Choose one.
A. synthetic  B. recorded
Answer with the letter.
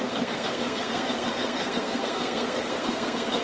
A